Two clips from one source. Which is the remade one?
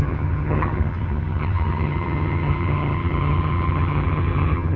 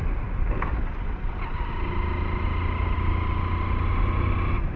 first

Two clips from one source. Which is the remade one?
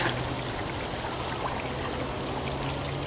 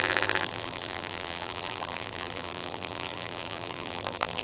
second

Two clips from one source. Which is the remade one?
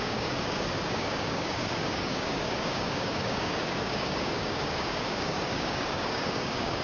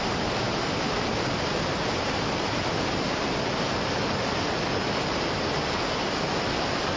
first